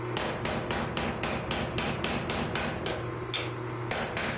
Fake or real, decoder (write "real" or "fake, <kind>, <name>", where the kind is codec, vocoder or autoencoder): real